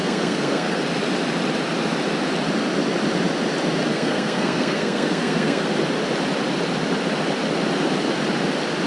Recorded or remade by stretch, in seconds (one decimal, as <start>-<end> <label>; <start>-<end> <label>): 0.0-0.8 remade; 0.8-3.9 recorded; 3.9-5.7 remade; 5.7-8.9 recorded